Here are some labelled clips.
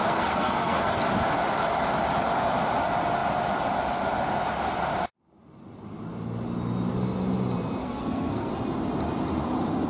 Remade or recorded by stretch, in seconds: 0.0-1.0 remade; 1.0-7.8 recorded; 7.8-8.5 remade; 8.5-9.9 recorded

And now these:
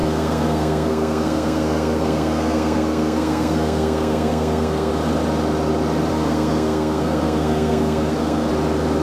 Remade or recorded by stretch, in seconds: 0.0-4.9 remade; 4.9-6.1 recorded; 6.1-8.5 remade; 8.5-9.0 recorded

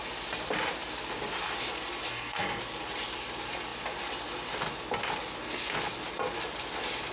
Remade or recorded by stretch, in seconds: 0.0-2.1 recorded; 2.1-2.6 remade; 2.6-7.1 recorded

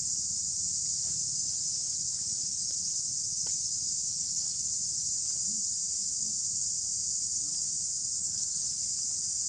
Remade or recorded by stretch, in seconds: 0.0-4.1 recorded; 4.1-4.7 remade; 4.7-8.2 recorded; 8.2-8.7 remade; 8.7-9.5 recorded

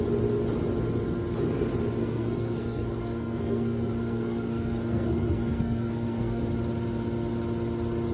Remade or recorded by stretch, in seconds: 0.0-2.0 recorded; 2.0-6.4 remade; 6.4-8.1 recorded